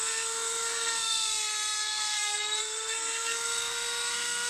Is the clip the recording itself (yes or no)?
no